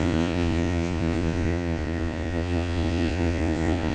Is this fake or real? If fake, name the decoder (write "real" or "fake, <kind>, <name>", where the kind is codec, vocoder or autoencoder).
fake, vocoder, Vocos